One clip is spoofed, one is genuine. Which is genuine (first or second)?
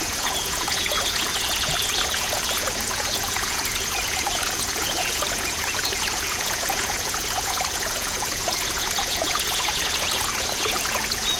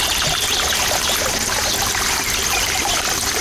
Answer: second